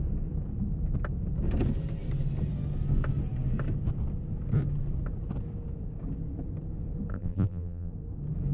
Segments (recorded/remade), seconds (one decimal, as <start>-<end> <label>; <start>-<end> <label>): 0.0-7.1 recorded; 7.1-7.9 remade; 7.9-8.5 recorded